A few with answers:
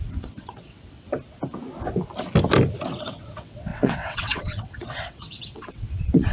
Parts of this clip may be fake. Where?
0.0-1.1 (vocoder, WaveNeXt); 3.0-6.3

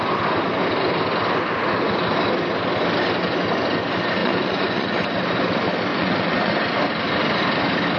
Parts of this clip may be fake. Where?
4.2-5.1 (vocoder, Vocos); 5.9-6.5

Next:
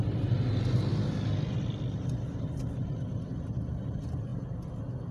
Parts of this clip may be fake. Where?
none